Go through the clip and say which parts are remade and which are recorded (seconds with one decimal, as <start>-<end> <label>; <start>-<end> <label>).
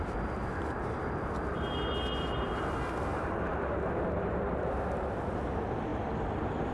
0.0-3.1 recorded; 3.1-4.8 remade; 4.8-6.7 recorded